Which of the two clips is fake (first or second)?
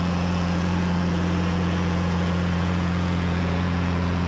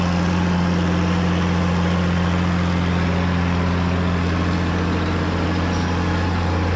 first